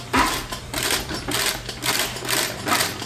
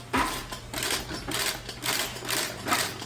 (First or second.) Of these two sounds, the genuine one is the second